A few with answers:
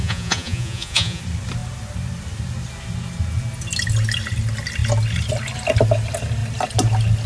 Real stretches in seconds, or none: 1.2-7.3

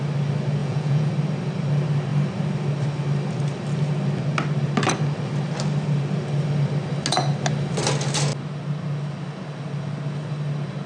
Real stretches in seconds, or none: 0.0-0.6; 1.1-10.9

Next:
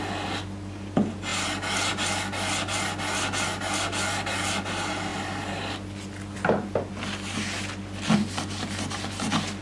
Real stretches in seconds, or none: 0.0-9.6

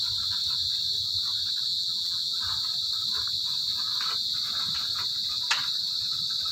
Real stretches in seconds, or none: 0.0-1.7; 2.4-6.5